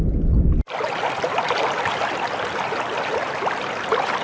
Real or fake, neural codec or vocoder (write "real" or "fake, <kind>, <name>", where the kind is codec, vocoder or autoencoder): real